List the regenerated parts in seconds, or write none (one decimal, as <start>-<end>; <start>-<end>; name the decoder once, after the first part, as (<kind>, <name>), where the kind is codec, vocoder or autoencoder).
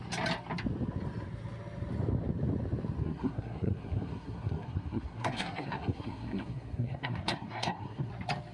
3.0-8.1 (codec, SNAC)